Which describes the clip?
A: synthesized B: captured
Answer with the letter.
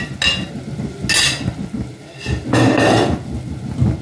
B